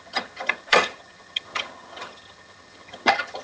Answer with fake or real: fake